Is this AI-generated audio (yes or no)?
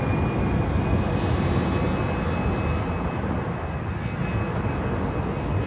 no